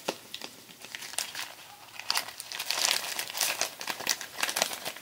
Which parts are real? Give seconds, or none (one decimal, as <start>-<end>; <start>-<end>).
0.0-5.0